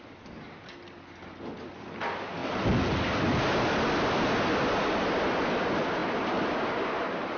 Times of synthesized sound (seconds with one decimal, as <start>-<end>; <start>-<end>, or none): none